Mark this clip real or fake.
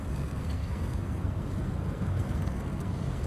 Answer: fake